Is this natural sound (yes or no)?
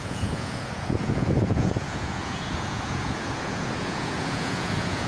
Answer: no